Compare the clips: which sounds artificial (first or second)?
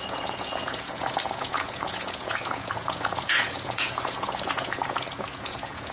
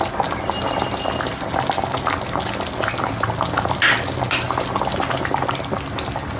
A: first